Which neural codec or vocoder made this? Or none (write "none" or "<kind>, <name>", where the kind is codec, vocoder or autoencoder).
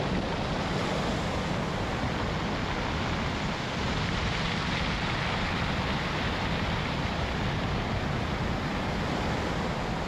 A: none